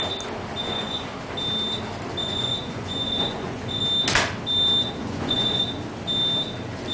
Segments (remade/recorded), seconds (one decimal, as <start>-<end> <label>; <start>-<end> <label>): 0.0-0.6 recorded; 0.6-1.1 remade; 1.1-2.2 recorded; 2.2-3.8 remade; 3.8-5.0 recorded; 5.0-5.6 remade; 5.6-6.9 recorded